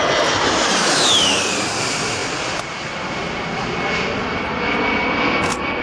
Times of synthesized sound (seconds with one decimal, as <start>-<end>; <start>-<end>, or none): none

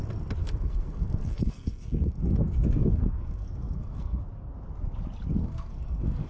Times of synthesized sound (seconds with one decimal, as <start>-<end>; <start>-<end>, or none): 0.4-4.2; 5.4-6.3

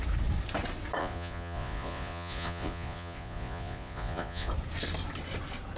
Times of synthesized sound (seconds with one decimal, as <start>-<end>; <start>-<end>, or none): 1.0-4.5

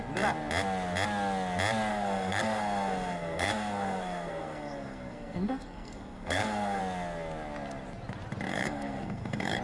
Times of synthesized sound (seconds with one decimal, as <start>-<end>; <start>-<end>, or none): 1.9-6.8; 8.5-9.6

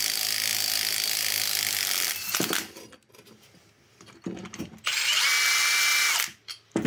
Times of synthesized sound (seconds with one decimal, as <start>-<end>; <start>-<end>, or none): none

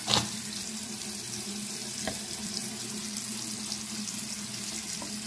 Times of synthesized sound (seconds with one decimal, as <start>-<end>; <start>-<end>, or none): 0.0-3.0

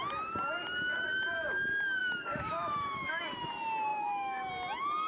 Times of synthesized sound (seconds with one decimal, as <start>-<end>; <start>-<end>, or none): 2.0-3.2; 3.9-4.5

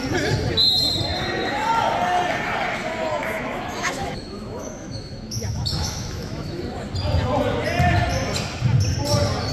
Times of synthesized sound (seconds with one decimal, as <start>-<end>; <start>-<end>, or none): 3.2-6.6